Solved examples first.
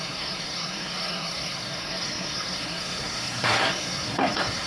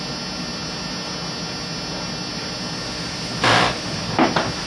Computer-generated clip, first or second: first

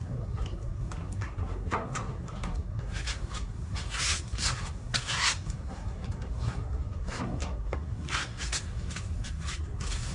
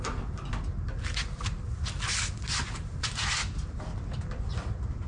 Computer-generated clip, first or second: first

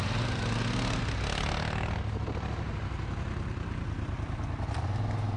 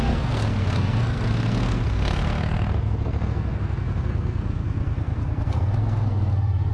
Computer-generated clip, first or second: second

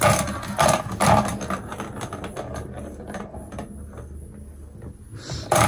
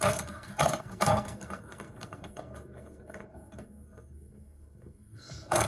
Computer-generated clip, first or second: second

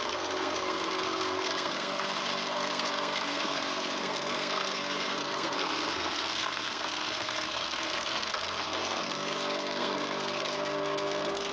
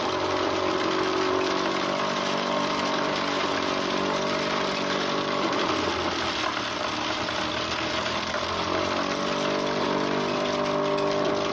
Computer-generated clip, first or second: first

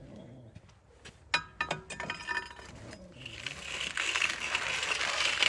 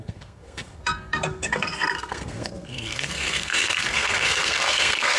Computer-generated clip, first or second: second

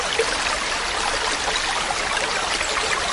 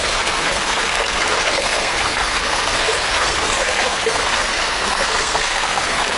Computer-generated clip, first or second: second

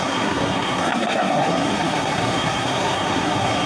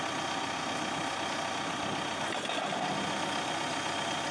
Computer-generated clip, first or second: first